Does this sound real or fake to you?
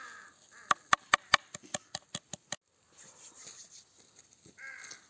real